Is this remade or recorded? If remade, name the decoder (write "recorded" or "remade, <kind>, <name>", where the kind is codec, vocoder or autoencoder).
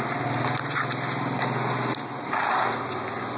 recorded